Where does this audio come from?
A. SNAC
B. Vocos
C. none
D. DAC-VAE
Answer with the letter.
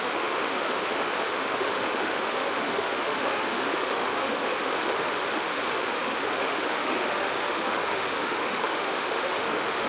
D